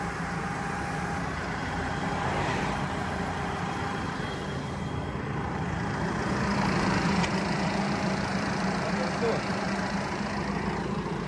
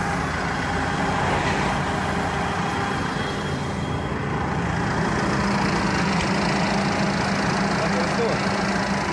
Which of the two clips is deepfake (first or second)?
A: first